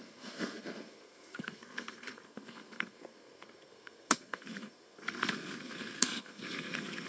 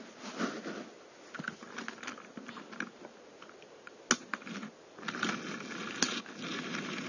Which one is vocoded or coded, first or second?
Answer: first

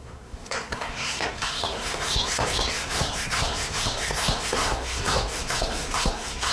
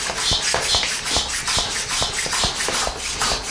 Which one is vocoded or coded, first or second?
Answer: first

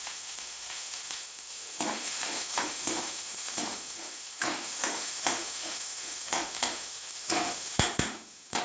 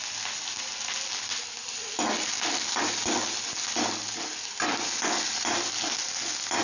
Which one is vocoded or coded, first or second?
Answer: first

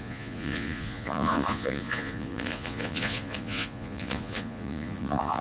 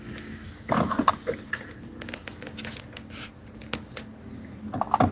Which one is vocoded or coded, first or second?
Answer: first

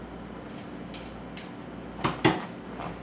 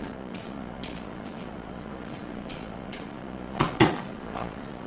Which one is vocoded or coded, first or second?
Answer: second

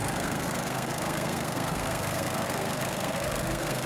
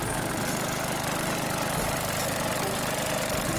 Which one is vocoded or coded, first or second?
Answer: first